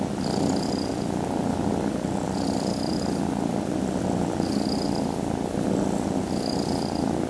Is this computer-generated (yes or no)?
no